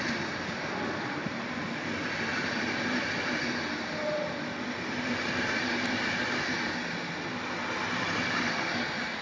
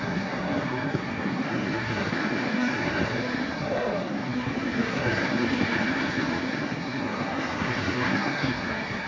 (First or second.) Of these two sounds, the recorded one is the first